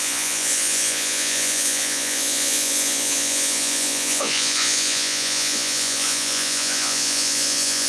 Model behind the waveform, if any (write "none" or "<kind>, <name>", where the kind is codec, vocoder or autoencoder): vocoder, Vocos